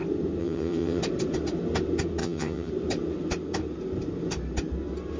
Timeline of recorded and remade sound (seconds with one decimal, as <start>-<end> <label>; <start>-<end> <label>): 0.0-0.4 recorded; 0.4-1.0 remade; 1.0-2.2 recorded; 2.2-2.7 remade; 2.7-5.2 recorded